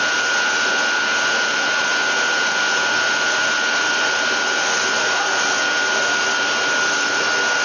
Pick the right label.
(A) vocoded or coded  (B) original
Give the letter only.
B